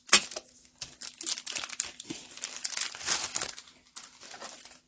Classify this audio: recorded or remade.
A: recorded